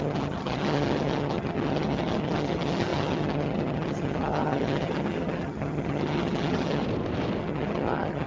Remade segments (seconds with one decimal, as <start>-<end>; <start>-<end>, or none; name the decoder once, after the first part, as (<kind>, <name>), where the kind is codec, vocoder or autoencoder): 0.0-6.8 (vocoder, HiFi-GAN); 7.4-8.3